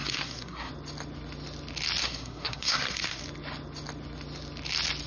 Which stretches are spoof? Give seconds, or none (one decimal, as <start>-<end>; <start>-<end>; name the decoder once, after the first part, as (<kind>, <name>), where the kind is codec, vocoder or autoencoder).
0.0-0.7 (codec, SNAC); 2.0-3.2